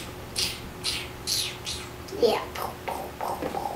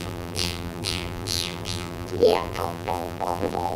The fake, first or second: second